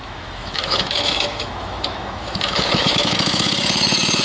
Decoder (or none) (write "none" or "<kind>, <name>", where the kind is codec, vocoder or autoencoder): autoencoder, DAC-VAE